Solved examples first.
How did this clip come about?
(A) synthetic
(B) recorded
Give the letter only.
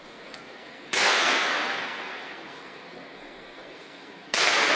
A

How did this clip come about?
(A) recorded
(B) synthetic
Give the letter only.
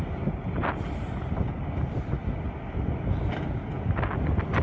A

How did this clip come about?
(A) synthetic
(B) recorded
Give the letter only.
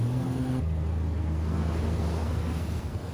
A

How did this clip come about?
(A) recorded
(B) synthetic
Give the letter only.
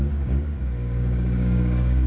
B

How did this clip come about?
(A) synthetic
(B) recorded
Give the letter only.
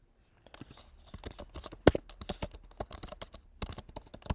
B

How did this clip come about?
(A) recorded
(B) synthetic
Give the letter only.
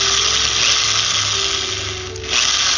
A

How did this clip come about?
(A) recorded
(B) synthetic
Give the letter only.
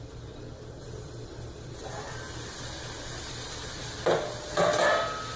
A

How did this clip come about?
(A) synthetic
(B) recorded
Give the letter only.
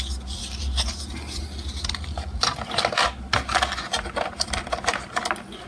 B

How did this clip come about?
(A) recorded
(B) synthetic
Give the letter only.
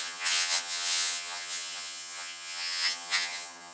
B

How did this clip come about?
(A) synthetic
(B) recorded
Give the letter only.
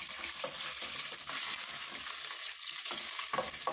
B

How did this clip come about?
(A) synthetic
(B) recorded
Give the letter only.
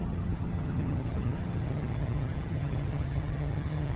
A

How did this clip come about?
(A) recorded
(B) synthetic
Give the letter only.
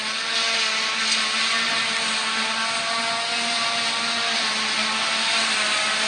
A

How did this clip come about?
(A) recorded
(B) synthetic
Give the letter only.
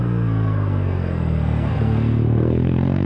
B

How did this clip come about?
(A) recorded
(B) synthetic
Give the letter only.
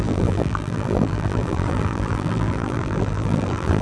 B